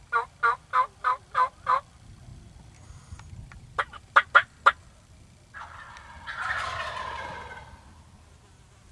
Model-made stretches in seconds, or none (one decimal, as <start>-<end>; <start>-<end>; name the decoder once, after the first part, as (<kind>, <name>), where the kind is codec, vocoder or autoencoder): none